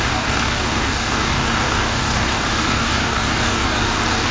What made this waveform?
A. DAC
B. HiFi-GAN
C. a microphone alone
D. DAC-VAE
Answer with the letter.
A